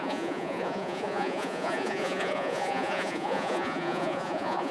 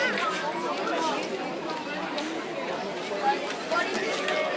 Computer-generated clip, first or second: first